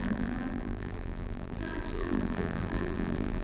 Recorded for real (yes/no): no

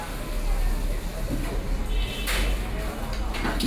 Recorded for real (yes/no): yes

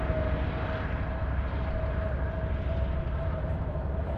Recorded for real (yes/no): yes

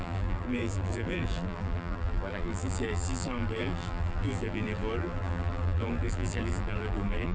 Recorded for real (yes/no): no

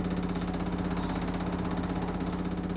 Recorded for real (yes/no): yes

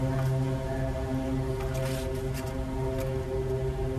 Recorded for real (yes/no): yes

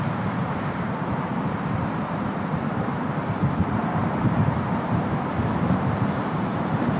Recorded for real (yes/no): no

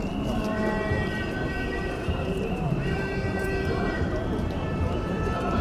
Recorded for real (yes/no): no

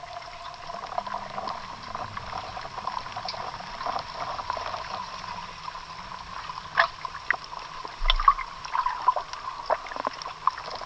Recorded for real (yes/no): yes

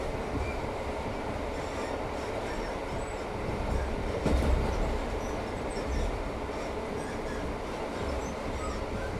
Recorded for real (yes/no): yes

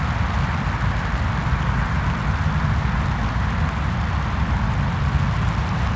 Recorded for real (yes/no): yes